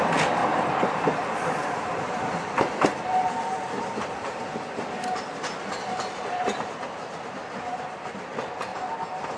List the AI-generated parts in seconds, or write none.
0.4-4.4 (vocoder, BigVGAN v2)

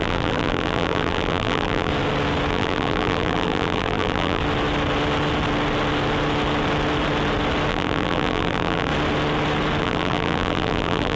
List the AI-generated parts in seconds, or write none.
0.0-1.9 (vocoder, BigVGAN v2); 2.5-4.4; 7.7-8.9; 9.8-11.2

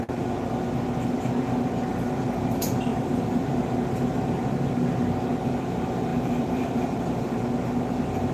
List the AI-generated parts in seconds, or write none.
2.9-3.6 (vocoder, BigVGAN v2); 6.1-7.4